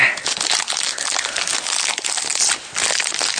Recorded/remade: recorded